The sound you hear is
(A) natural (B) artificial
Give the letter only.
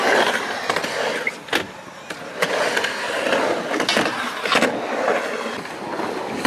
A